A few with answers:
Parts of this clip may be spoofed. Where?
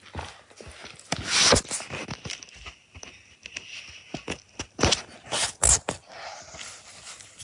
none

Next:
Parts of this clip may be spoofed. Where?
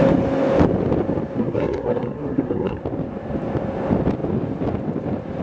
1.4-2.8 (codec, SNAC)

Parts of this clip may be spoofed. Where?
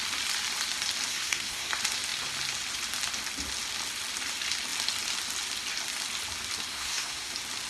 1.1-1.7 (codec, SNAC); 6.7-7.3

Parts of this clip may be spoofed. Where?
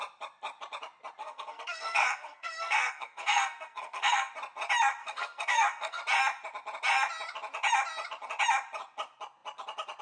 1.2-4.3 (codec, SNAC); 5.0-6.0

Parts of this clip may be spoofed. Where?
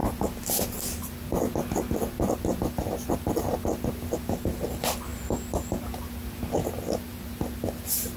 none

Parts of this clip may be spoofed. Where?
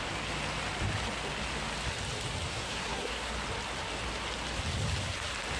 2.5-3.3 (codec, SNAC)